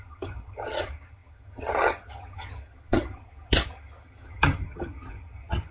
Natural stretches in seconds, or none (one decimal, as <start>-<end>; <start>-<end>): none